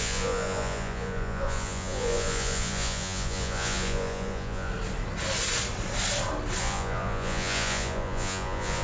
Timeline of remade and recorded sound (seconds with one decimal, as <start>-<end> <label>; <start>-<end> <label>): 0.0-4.7 remade; 4.7-6.6 recorded; 6.6-8.8 remade